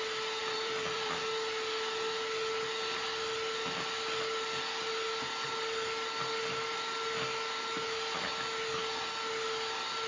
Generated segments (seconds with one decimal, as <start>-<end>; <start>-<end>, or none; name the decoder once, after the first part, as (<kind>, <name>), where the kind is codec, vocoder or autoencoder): 0.4-1.2 (vocoder, BigVGAN v2)